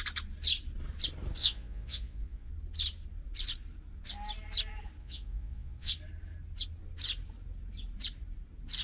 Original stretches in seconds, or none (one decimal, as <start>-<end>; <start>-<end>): 0.0-1.4; 2.5-5.0; 5.9-8.8